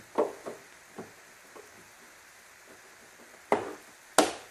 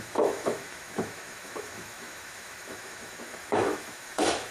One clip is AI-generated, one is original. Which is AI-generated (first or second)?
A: second